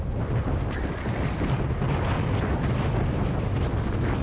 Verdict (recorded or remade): recorded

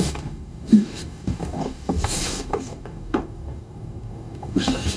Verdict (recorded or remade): remade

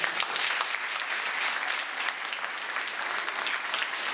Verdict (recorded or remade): recorded